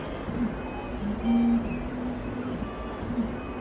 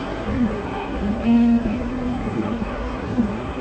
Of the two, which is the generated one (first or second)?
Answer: second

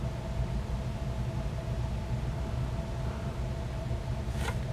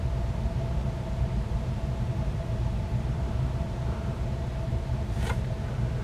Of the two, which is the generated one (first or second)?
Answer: second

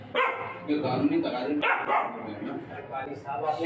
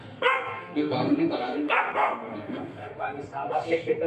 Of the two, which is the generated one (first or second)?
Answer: second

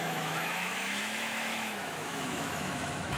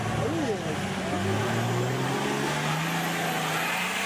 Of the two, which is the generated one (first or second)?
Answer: first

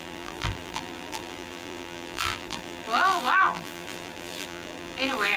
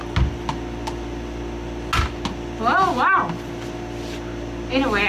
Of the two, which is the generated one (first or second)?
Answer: first